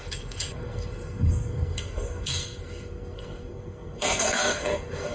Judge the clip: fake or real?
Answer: fake